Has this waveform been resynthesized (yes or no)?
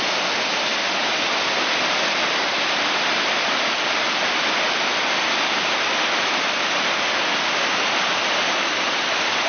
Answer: yes